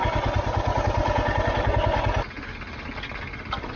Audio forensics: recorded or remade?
recorded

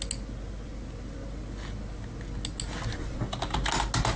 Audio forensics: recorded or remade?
recorded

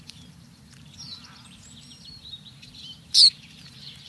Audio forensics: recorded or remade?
remade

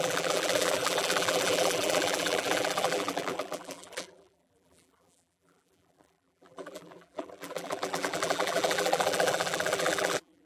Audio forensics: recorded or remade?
remade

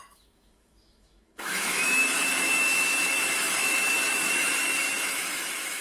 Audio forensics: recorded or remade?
remade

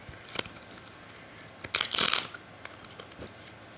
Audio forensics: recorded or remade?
recorded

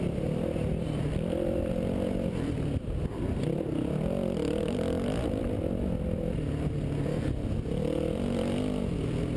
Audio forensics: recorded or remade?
recorded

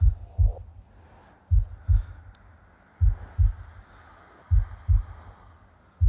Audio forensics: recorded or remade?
recorded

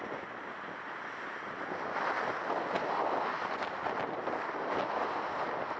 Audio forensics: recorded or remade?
recorded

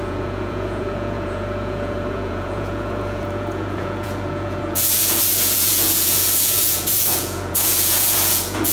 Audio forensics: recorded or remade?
remade